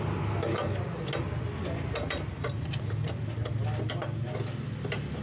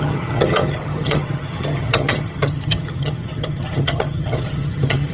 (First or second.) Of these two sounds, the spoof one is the second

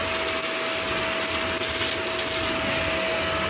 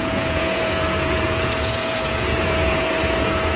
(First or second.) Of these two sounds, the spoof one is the second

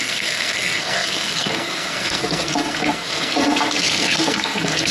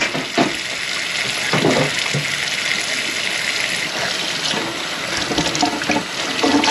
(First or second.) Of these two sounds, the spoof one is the first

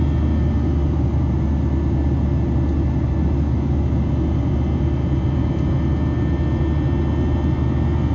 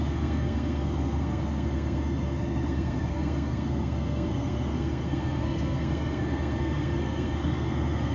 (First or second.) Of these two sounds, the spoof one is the second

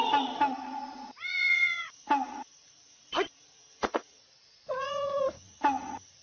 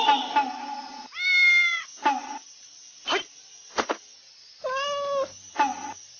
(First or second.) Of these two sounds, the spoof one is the first